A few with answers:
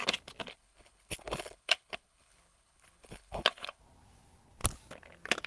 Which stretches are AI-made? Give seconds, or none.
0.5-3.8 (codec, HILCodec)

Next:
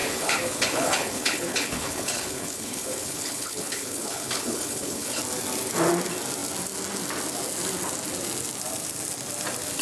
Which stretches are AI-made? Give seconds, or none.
0.0-5.2 (codec, HILCodec)

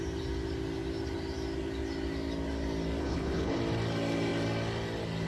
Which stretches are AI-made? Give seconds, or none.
3.0-3.6 (codec, HILCodec)

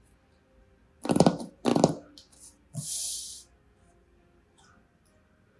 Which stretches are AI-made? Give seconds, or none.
none

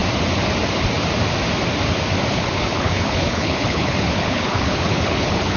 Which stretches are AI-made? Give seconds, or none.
2.3-5.6 (codec, HILCodec)